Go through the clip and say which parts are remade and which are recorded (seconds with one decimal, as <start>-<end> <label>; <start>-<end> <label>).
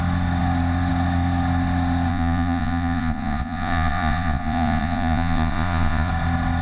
0.0-2.1 recorded; 2.1-6.1 remade; 6.1-6.6 recorded